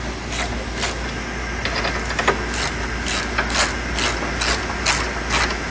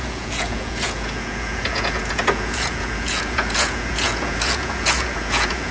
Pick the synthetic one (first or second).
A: second